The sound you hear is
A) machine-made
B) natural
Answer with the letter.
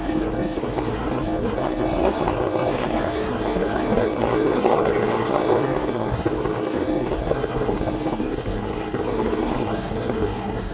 A